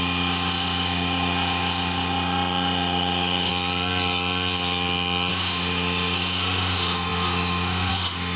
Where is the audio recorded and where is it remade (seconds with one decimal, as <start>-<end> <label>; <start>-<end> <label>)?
0.0-3.5 remade; 3.5-5.3 recorded; 5.3-8.4 remade